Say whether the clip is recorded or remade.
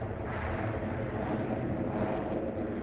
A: recorded